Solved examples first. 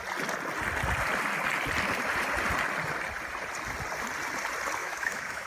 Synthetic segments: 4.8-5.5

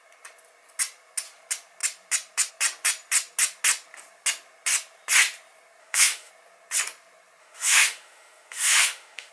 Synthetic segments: 5.8-6.3; 7.4-9.3

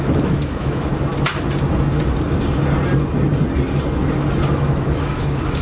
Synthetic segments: 0.0-1.1; 4.5-5.6

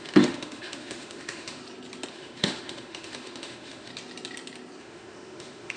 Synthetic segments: 0.0-1.6; 2.1-3.9; 4.8-5.8

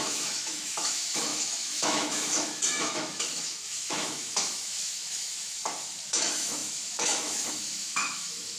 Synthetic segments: 0.0-5.6; 6.1-8.6

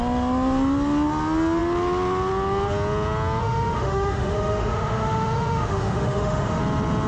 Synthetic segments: 3.4-6.6

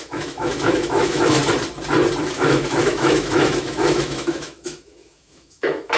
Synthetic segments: 0.0-1.4; 2.2-6.0

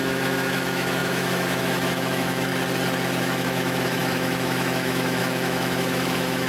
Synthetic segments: 0.0-2.5; 3.2-6.5